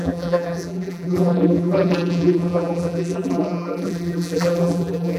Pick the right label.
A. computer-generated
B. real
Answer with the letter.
A